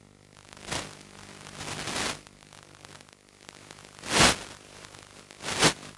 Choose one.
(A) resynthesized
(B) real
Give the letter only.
B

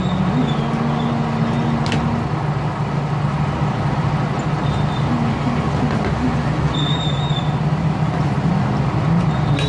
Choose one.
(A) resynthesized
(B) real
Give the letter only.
B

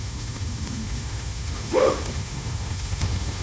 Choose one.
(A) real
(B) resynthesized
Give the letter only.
B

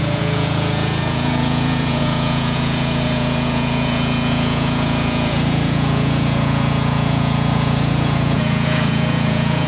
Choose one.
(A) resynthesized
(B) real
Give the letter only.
A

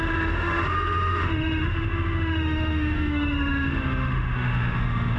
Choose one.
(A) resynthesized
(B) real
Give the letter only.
A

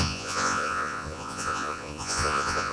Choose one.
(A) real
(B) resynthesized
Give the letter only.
B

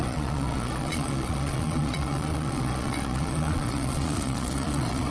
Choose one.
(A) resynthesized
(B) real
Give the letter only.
A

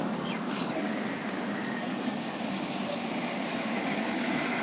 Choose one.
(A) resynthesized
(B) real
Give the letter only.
A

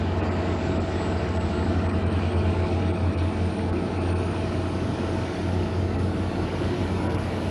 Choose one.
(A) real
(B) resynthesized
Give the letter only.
B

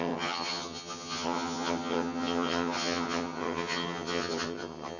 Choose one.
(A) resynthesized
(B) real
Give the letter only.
A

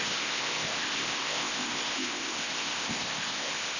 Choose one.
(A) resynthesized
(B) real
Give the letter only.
A